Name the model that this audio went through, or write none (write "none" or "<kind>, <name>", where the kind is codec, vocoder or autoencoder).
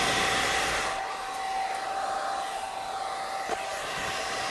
none